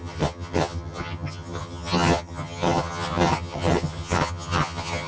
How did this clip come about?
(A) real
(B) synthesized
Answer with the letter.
B